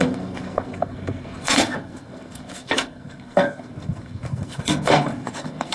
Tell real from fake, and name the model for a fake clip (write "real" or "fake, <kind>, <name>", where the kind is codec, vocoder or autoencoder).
fake, codec, SNAC